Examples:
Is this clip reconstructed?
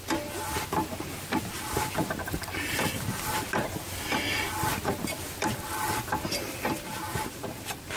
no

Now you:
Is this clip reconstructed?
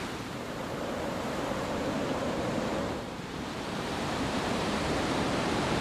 yes